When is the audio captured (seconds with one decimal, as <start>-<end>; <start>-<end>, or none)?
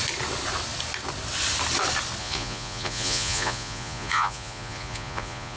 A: 0.0-2.2